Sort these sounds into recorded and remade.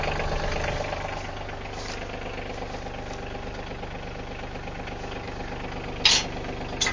recorded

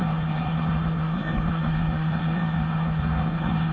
remade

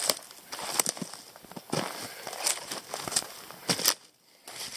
recorded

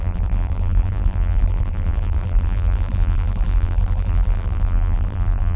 remade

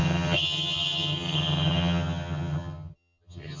remade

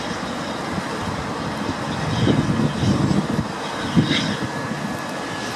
recorded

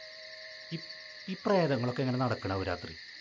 recorded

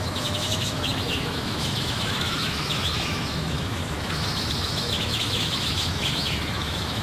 remade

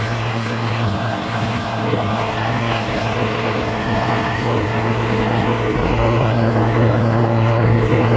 remade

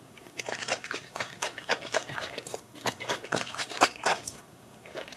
remade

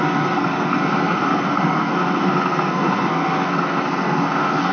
remade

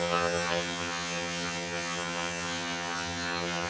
remade